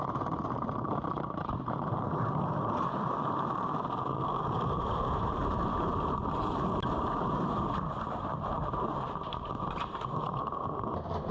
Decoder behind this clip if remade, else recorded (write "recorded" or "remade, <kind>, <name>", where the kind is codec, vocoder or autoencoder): remade, vocoder, BigVGAN v2